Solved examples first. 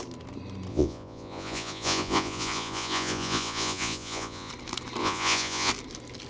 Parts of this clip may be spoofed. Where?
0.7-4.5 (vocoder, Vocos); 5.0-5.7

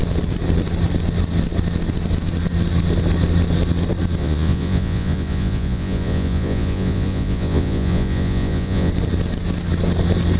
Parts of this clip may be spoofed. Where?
4.2-8.9 (vocoder, Vocos)

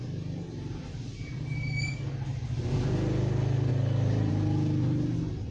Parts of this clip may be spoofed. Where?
1.1-1.9 (vocoder, BigVGAN v2)

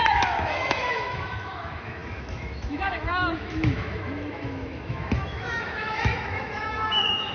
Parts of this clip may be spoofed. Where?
0.0-7.3 (autoencoder, DAC-VAE)

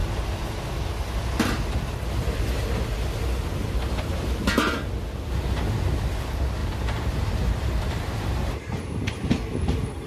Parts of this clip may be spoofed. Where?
6.6-8.7 (vocoder, BigVGAN v2)